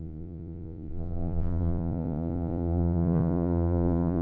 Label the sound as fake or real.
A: fake